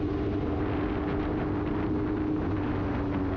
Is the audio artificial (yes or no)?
no